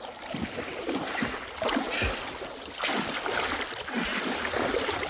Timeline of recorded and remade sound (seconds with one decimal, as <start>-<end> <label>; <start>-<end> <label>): 0.0-5.1 recorded